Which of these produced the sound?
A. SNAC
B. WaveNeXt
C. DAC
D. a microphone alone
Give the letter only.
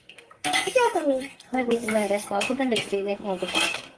A